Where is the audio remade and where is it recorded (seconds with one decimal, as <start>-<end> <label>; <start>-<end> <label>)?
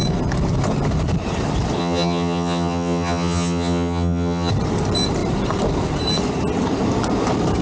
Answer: 0.0-1.8 recorded; 1.8-4.5 remade; 4.5-7.6 recorded